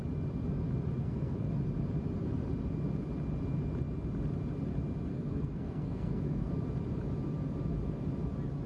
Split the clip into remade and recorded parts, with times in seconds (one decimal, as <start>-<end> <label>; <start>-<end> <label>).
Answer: 0.0-1.0 recorded; 1.0-1.5 remade; 1.5-5.1 recorded; 5.1-6.5 remade; 6.5-8.7 recorded